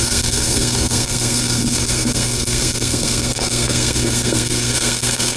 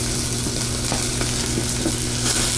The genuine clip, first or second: second